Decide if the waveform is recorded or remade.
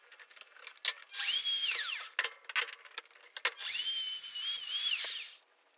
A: recorded